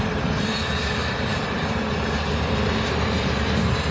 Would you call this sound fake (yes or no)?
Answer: yes